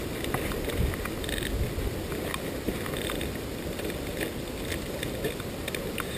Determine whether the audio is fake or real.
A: real